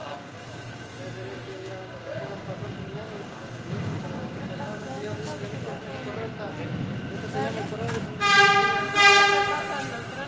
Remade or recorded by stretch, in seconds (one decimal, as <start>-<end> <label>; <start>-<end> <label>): 0.0-1.0 remade; 1.0-1.5 recorded; 1.5-5.4 remade; 5.4-10.3 recorded